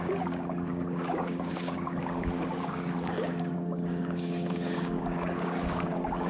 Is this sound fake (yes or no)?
yes